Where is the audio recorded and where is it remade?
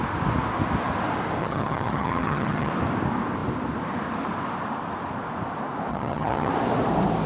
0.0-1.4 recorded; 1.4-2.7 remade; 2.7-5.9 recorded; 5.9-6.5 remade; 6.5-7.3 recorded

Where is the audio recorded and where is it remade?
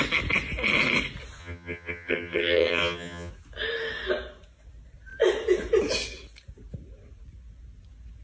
0.0-1.4 recorded; 1.4-3.3 remade; 3.3-8.2 recorded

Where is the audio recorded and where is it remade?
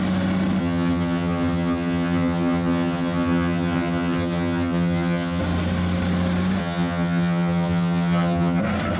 0.0-0.6 recorded; 0.6-5.4 remade; 5.4-6.6 recorded; 6.6-8.6 remade; 8.6-9.0 recorded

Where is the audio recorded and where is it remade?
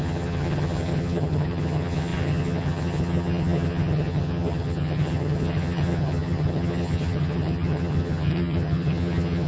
0.0-9.5 remade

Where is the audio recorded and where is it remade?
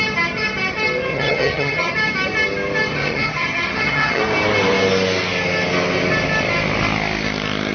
0.0-1.1 recorded; 1.1-1.9 remade; 1.9-2.9 recorded; 2.9-4.2 remade; 4.2-7.7 recorded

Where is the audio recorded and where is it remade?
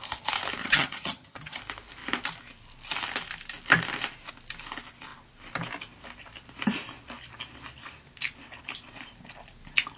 0.0-0.6 recorded; 0.6-1.6 remade; 1.6-10.0 recorded